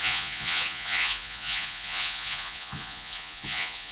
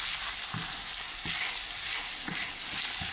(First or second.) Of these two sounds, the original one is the second